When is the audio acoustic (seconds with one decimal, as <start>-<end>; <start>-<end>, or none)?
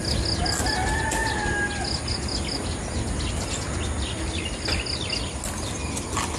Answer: 0.0-6.4